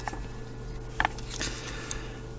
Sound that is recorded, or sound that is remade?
recorded